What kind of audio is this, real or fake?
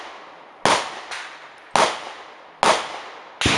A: real